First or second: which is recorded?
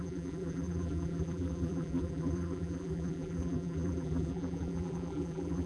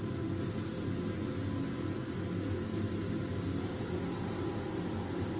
second